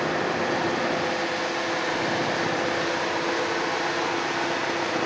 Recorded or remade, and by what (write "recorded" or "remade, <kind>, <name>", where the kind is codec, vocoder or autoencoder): recorded